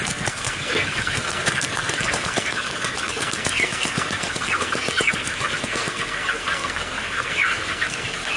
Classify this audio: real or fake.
fake